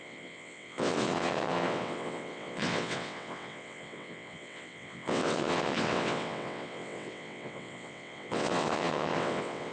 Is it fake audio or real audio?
fake